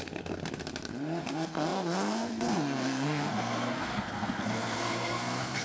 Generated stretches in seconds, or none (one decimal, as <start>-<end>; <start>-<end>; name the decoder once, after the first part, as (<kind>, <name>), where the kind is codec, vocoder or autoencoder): 0.0-0.6 (codec, SNAC); 1.2-5.6